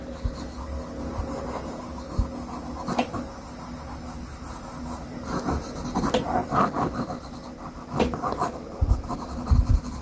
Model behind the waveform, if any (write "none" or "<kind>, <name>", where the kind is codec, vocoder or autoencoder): none